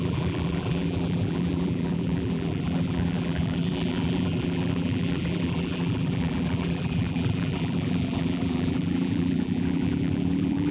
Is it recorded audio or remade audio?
remade